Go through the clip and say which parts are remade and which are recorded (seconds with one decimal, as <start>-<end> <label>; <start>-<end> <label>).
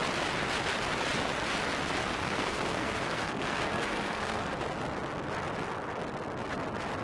0.0-2.2 recorded; 2.2-4.6 remade; 4.6-7.0 recorded